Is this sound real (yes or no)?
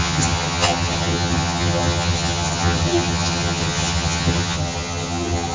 no